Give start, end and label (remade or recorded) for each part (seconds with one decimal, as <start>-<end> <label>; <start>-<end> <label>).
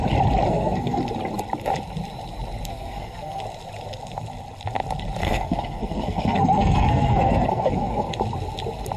0.0-0.5 recorded; 0.5-1.0 remade; 1.0-2.7 recorded; 2.7-3.4 remade; 3.4-5.2 recorded; 5.2-8.1 remade; 8.1-9.0 recorded